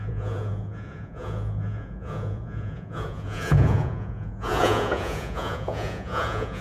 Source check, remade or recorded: remade